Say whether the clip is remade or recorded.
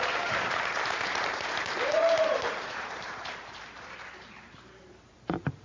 remade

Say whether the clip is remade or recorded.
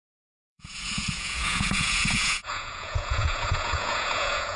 remade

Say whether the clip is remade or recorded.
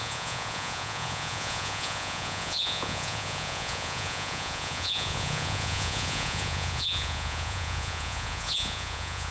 remade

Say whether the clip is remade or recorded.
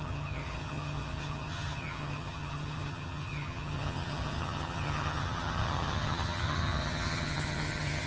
remade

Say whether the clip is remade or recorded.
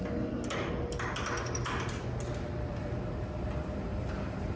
recorded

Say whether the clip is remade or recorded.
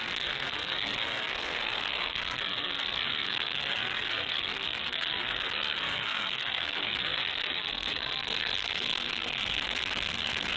remade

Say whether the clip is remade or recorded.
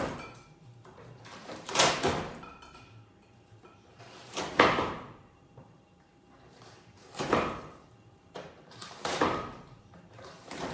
remade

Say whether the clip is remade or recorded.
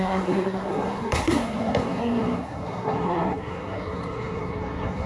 remade